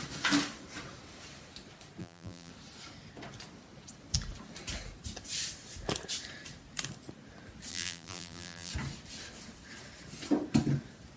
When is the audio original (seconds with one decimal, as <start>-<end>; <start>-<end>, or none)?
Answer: 0.0-2.0; 2.5-7.7; 8.7-11.2